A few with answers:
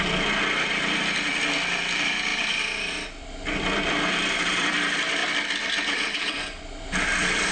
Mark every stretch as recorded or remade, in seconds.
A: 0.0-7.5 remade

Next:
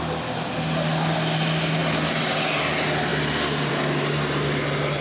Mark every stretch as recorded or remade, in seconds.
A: 0.0-5.0 recorded

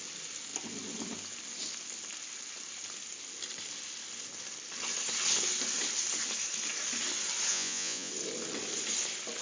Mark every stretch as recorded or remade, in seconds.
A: 0.0-7.5 recorded; 7.5-8.1 remade; 8.1-9.4 recorded

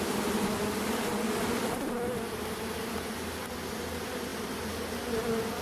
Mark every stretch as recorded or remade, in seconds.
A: 0.0-5.6 recorded